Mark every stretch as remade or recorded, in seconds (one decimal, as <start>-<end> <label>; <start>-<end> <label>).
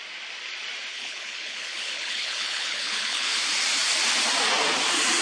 0.0-0.9 recorded; 0.9-3.4 remade; 3.4-5.2 recorded